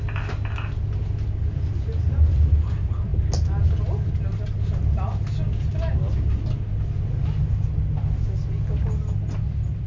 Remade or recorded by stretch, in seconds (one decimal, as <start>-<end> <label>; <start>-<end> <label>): 0.0-9.9 recorded

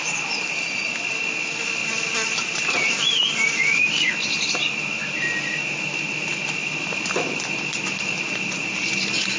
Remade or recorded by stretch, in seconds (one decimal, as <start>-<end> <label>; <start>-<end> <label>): 0.0-1.8 recorded; 1.8-4.1 remade; 4.1-6.3 recorded; 6.3-8.5 remade; 8.5-9.4 recorded